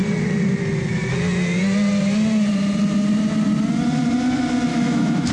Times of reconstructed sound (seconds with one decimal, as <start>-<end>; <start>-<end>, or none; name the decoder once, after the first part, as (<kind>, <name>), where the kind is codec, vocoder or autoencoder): 4.7-5.3 (autoencoder, DAC-VAE)